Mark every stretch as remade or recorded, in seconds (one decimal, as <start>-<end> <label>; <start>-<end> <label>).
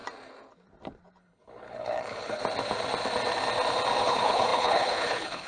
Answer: 0.0-1.2 recorded; 1.2-2.4 remade; 2.4-4.0 recorded; 4.0-5.5 remade